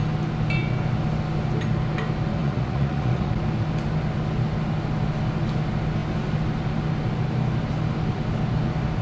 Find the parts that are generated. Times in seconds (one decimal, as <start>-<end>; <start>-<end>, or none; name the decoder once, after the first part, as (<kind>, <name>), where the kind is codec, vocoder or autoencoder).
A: 2.4-3.3 (vocoder, Vocos)